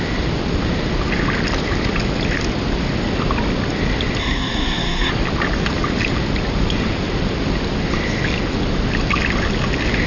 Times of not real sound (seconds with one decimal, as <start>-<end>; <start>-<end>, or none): 4.2-5.1